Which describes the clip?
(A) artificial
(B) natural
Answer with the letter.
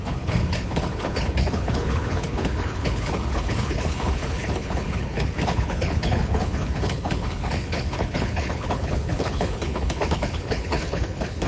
A